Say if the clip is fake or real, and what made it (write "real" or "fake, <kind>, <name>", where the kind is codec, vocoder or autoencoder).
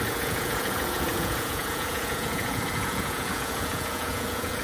fake, vocoder, Vocos